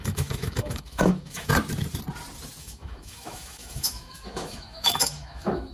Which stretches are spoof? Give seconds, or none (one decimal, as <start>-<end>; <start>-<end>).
0.0-1.5; 2.6-5.7